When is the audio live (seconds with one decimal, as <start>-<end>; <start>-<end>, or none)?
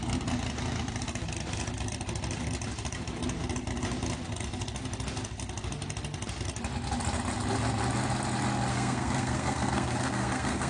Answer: 0.0-8.7